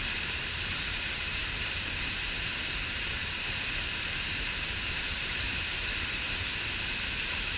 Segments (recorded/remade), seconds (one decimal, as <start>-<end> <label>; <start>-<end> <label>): 0.0-7.6 remade